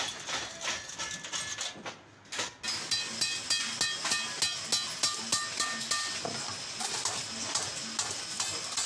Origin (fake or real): real